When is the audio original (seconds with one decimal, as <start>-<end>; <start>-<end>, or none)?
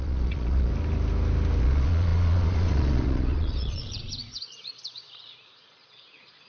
0.7-1.6